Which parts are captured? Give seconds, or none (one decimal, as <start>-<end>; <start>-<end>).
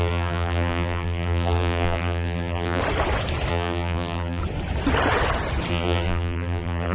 2.8-3.5; 4.4-5.7